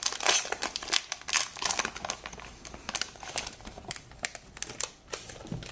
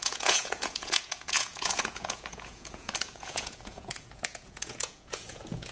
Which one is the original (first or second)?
first